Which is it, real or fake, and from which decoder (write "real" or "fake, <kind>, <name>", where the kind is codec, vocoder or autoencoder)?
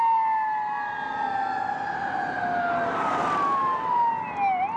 real